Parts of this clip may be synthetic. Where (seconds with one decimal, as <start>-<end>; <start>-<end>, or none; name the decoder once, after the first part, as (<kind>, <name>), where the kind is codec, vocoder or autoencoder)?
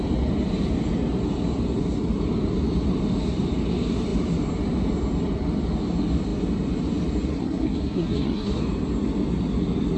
7.3-8.6 (codec, SNAC)